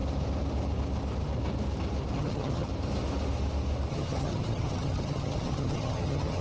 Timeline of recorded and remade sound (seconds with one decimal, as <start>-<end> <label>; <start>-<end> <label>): 0.0-2.2 recorded; 2.2-2.7 remade; 2.7-3.9 recorded; 3.9-6.4 remade